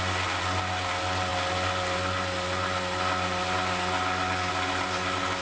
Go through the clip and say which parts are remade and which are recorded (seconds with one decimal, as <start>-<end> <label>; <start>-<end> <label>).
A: 0.0-5.4 recorded